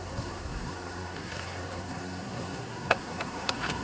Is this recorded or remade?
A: remade